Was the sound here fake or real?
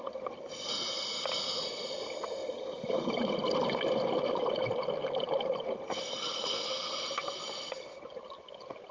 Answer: real